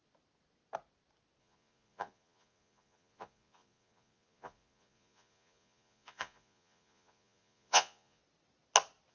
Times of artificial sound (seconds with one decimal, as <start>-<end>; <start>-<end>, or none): 1.4-8.2